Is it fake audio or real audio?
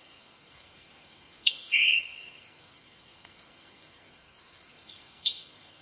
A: fake